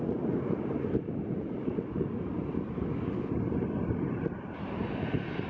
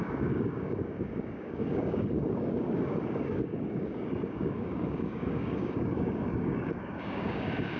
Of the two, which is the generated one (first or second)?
second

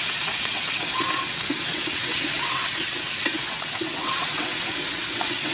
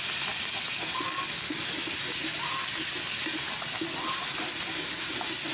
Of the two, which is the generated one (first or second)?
first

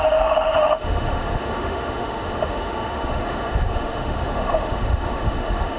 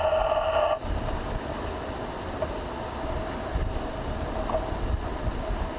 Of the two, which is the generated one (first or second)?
first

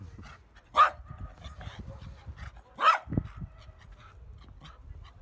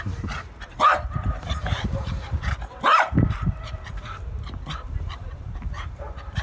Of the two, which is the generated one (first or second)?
second